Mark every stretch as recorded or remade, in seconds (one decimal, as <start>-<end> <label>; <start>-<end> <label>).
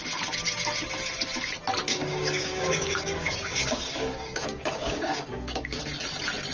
0.0-1.9 recorded; 1.9-5.8 remade; 5.8-6.5 recorded